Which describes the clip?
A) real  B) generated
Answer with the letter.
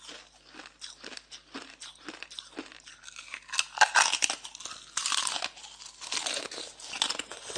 A